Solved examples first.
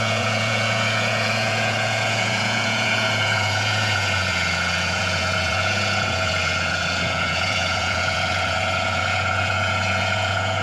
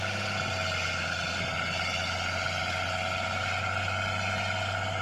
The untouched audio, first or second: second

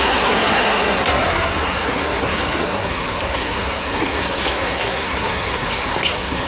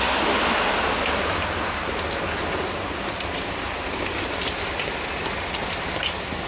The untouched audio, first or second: second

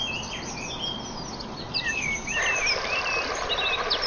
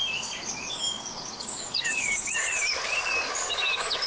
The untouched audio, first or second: first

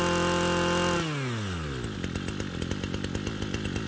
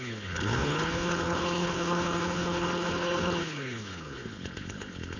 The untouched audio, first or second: first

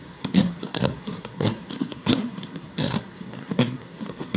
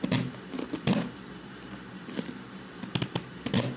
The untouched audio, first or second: second